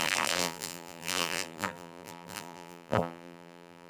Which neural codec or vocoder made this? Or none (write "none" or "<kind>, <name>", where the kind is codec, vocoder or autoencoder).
vocoder, BigVGAN v2